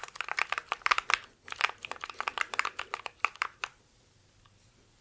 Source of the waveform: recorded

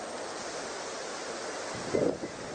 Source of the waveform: recorded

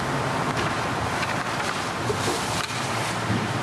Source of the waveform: recorded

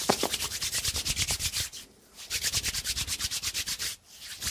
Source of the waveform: recorded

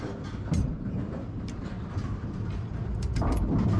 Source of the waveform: remade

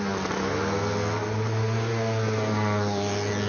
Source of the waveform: recorded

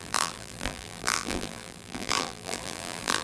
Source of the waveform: remade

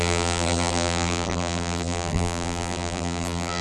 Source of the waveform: remade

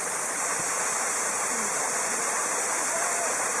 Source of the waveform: remade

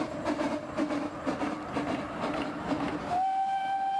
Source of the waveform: recorded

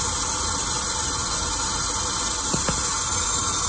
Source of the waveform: recorded